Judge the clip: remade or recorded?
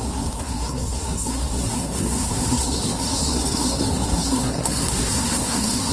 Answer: remade